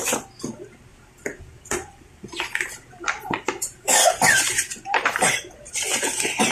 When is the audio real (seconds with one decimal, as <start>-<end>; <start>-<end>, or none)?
0.0-0.9; 4.1-4.7; 5.4-6.5